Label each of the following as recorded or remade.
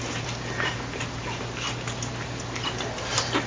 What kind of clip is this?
recorded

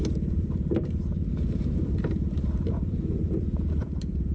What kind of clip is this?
recorded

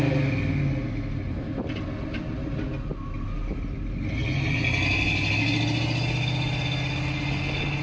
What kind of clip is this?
recorded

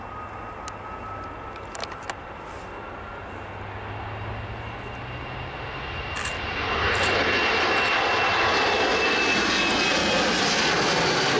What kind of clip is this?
recorded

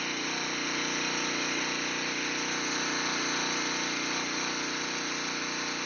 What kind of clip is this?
recorded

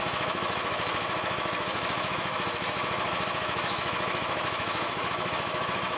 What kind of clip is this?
remade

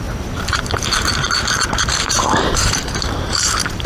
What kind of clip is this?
remade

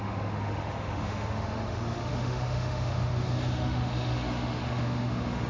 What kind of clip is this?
remade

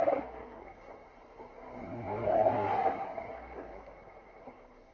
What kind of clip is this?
remade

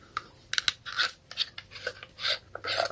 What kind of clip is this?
recorded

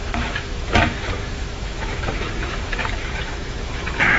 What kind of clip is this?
remade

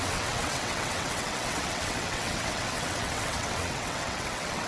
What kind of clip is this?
remade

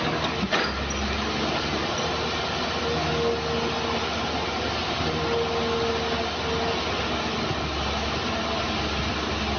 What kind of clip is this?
recorded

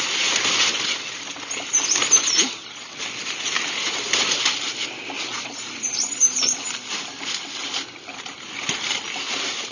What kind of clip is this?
recorded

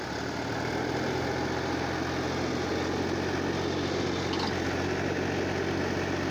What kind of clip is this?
recorded